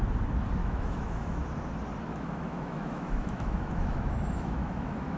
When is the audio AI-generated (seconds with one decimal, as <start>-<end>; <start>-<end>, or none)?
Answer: 0.6-1.4; 2.1-5.2